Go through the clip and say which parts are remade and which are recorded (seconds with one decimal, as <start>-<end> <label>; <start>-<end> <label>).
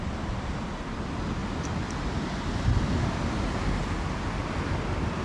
0.0-5.2 recorded